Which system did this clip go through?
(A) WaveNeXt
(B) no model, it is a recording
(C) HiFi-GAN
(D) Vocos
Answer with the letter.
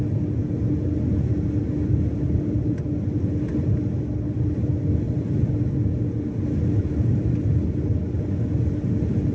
B